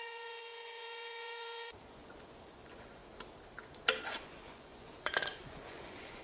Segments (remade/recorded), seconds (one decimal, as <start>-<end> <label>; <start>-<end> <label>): 0.0-3.0 remade; 3.0-4.0 recorded; 4.0-6.2 remade